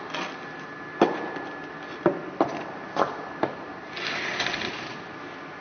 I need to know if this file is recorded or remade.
recorded